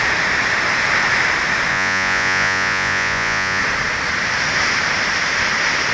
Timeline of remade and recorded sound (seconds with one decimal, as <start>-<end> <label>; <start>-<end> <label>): 0.0-1.7 recorded; 1.7-3.6 remade; 3.6-5.9 recorded